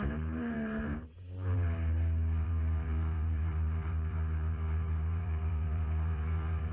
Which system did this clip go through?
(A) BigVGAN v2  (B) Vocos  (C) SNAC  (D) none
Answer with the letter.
A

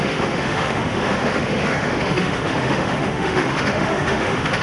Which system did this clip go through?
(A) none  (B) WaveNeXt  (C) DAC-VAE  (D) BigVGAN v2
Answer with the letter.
C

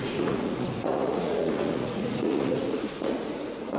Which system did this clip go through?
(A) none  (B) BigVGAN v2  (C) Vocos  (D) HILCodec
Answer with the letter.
C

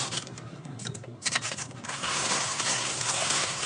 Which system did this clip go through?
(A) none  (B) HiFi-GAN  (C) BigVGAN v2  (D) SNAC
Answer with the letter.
D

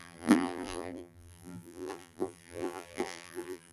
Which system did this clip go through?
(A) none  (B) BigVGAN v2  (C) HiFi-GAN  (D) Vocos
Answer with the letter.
B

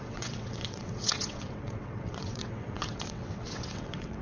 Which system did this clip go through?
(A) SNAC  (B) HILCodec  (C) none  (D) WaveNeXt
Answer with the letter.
D